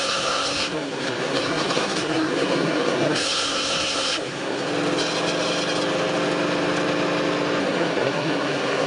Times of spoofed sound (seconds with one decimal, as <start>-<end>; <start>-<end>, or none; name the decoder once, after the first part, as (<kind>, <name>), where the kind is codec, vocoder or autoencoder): 0.0-4.7 (codec, SNAC); 7.6-8.9